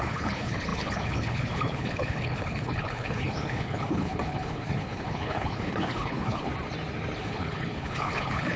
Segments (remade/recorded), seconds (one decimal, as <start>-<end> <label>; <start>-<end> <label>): 0.0-6.5 remade; 6.5-7.2 recorded; 7.2-8.6 remade